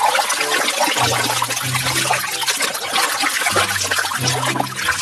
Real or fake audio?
real